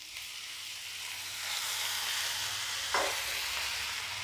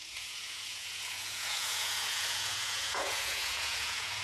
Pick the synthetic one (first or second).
second